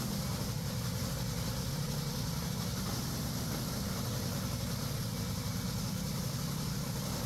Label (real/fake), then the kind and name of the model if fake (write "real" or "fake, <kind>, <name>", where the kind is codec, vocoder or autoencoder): real